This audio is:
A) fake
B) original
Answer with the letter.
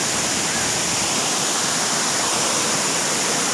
B